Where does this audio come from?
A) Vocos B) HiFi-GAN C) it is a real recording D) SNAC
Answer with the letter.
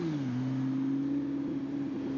C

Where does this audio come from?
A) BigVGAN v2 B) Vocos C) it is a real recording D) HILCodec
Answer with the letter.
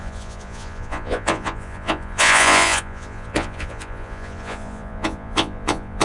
B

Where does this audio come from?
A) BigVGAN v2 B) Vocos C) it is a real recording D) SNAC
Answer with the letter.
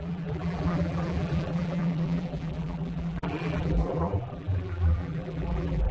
A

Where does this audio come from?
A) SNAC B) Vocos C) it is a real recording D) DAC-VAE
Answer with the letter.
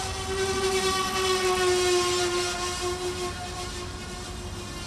C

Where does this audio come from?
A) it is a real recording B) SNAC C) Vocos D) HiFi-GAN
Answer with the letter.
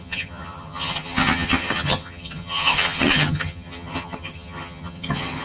D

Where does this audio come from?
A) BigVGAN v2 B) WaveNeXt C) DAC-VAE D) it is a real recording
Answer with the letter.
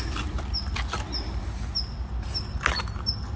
D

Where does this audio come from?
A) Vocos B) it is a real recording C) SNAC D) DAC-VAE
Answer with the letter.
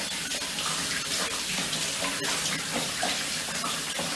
B